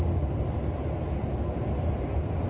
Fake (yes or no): no